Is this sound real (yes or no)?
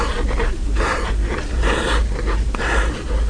no